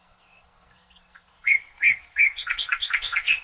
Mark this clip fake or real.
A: fake